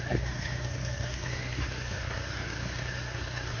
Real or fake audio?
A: fake